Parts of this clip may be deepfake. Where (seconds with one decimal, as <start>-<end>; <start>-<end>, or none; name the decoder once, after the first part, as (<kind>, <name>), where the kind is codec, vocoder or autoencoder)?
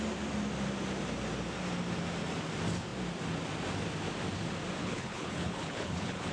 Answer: 4.8-6.3 (codec, HILCodec)